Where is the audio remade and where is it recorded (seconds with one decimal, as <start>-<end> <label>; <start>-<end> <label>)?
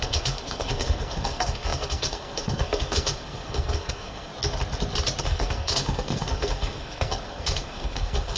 0.0-4.3 remade; 4.3-5.2 recorded; 5.2-8.4 remade